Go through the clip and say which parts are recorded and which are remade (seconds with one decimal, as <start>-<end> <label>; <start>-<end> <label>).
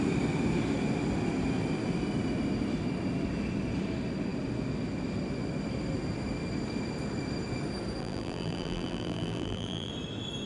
0.0-8.0 recorded; 8.0-9.9 remade; 9.9-10.5 recorded